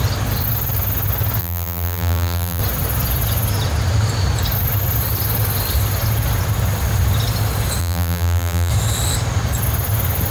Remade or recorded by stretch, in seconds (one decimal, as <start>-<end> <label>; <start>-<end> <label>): 0.0-1.4 recorded; 1.4-2.6 remade; 2.6-7.8 recorded; 7.8-8.7 remade; 8.7-10.3 recorded